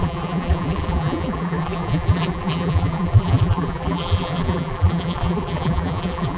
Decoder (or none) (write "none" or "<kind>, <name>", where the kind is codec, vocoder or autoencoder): vocoder, BigVGAN v2